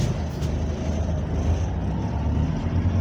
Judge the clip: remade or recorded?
recorded